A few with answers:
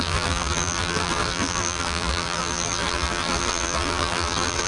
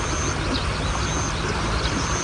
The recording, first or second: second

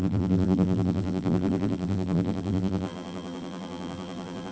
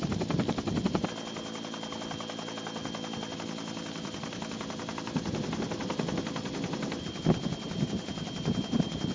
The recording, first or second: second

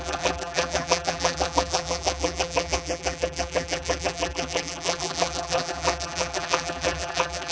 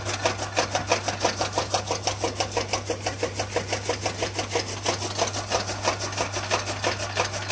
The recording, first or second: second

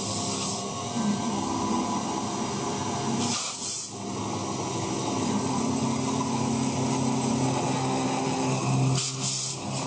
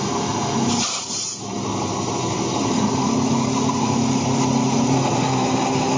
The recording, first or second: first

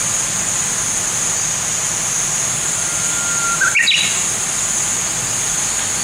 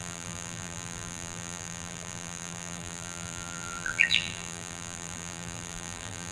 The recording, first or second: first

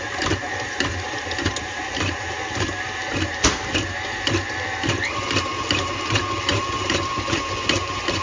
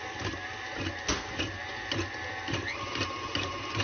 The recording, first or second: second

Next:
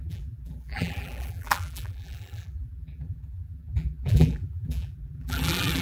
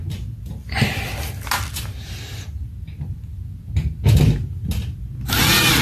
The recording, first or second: second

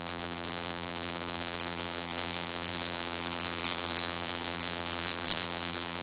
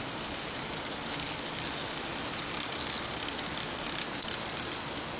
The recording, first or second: second